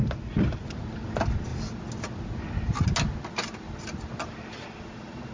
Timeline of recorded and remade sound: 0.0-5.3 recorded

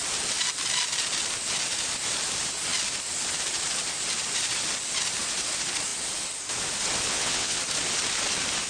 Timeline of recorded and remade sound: 0.0-7.1 recorded; 7.1-7.6 remade; 7.6-8.7 recorded

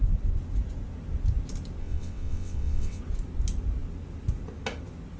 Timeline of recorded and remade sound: 0.0-1.8 recorded; 1.8-3.0 remade; 3.0-5.2 recorded

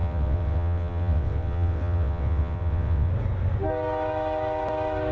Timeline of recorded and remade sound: 0.0-3.1 remade; 3.1-5.1 recorded

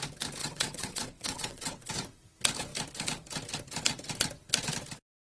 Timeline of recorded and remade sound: 0.0-0.4 recorded; 0.4-1.9 remade; 1.9-5.3 recorded

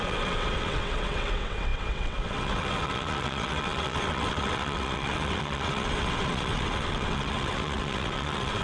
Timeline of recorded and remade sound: 0.0-8.6 remade

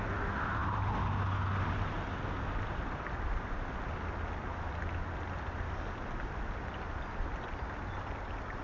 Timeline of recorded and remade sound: 0.0-8.6 recorded

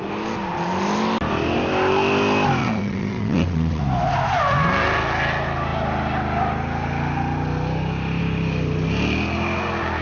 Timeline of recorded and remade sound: 0.0-2.6 recorded; 2.6-3.8 remade; 3.8-10.0 recorded